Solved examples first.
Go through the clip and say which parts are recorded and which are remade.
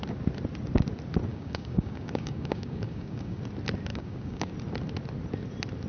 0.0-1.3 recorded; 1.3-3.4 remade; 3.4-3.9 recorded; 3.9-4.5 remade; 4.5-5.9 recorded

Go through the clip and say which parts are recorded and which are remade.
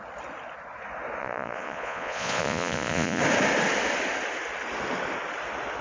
0.0-1.2 recorded; 1.2-3.2 remade; 3.2-5.8 recorded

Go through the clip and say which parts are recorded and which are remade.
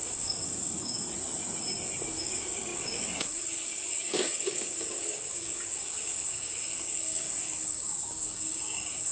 0.0-1.0 remade; 1.0-2.2 recorded; 2.2-9.1 remade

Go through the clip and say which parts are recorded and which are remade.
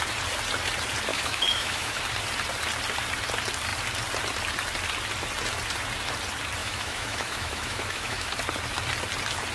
0.0-1.1 recorded; 1.1-2.0 remade; 2.0-6.6 recorded; 6.6-8.3 remade; 8.3-9.5 recorded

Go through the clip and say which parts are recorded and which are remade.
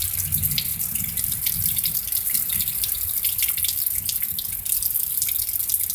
0.0-0.7 recorded; 0.7-3.4 remade; 3.4-5.9 recorded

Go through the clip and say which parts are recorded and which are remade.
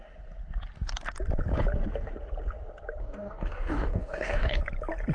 0.0-3.0 recorded; 3.0-4.6 remade; 4.6-5.1 recorded